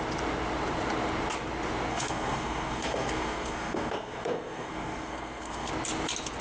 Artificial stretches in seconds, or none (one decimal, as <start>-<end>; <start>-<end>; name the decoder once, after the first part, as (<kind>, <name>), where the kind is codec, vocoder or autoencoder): 1.9-5.7 (codec, SNAC)